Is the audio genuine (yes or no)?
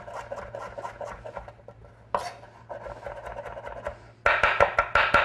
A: yes